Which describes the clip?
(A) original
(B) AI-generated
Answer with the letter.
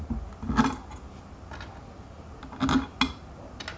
A